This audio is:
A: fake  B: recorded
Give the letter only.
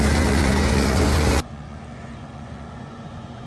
A